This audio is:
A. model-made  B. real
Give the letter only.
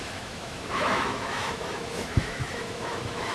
A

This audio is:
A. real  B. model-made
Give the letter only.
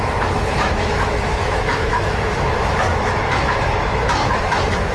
B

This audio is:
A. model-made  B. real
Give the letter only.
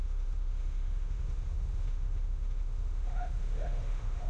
A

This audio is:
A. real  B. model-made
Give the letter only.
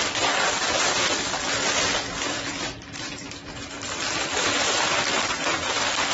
A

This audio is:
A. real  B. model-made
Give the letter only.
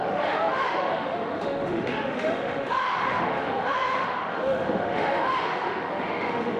B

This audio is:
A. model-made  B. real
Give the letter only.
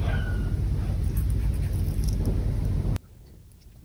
B